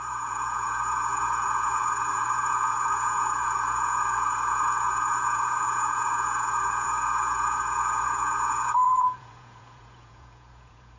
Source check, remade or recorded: remade